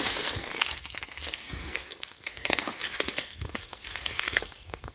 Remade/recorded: remade